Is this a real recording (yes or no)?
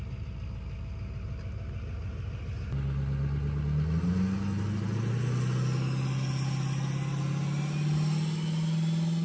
yes